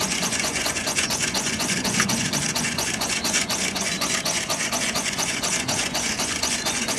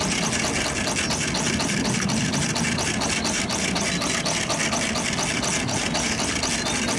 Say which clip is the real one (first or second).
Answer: second